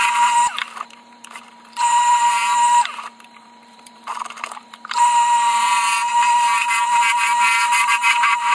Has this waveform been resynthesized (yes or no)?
yes